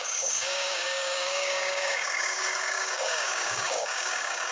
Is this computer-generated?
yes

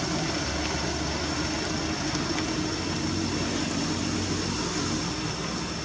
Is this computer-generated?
no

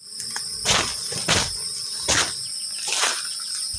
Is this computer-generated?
no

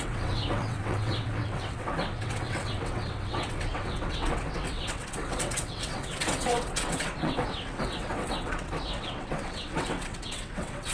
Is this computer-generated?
yes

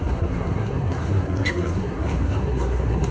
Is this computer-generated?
yes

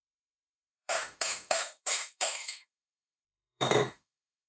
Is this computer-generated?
yes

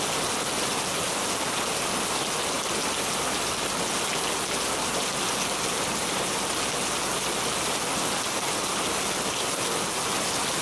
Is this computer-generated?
no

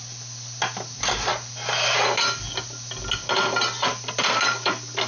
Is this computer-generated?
no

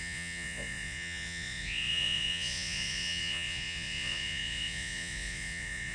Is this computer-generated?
yes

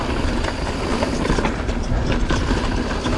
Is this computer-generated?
no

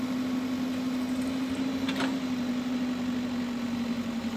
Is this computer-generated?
no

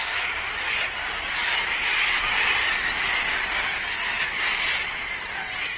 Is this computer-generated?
no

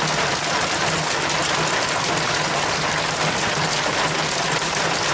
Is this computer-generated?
no